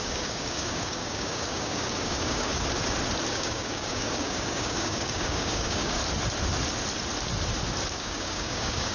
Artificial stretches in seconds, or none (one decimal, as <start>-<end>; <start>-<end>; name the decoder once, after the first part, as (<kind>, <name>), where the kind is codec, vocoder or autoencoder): 0.0-2.5 (codec, DAC); 3.3-6.0; 7.9-8.9